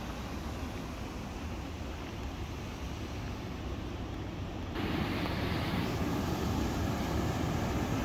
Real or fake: real